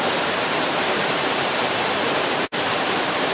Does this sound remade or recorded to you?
remade